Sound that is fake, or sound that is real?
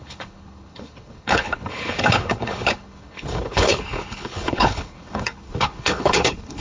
fake